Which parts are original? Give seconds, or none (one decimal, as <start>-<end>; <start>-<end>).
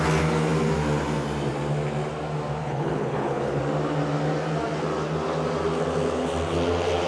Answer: 0.0-2.6; 3.6-7.1